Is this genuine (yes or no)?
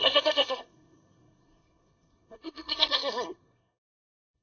no